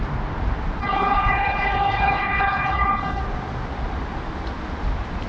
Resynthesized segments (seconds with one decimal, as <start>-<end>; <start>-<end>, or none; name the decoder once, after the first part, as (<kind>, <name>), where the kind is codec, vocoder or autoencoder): 0.8-3.2 (codec, HILCodec)

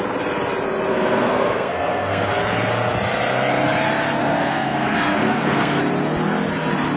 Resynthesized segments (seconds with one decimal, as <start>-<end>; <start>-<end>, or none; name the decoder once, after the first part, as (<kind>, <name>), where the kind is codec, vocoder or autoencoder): 0.9-2.3 (codec, SNAC); 4.2-5.8

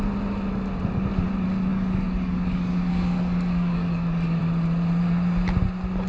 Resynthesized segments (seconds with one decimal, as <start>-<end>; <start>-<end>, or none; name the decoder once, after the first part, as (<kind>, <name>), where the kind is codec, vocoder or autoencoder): 1.7-4.4 (codec, DAC)